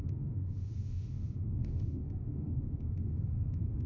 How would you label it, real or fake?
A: fake